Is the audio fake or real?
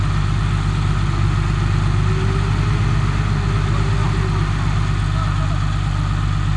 real